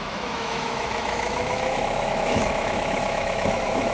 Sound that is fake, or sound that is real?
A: fake